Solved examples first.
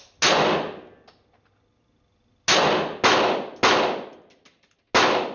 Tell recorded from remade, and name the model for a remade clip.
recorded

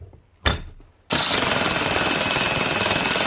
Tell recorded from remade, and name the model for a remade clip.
recorded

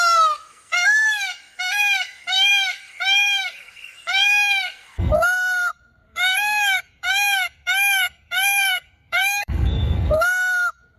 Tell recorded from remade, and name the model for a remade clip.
remade, codec, SNAC